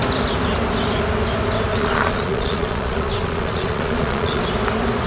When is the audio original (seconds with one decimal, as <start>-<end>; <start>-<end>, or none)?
0.0-1.7; 4.4-5.1